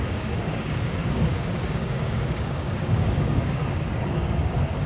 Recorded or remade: remade